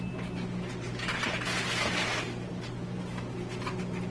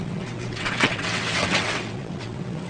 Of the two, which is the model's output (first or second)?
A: second